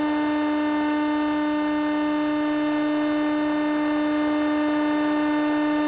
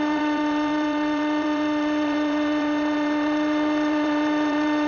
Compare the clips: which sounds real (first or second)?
first